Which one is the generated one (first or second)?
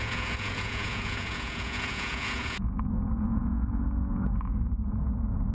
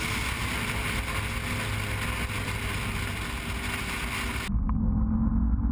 first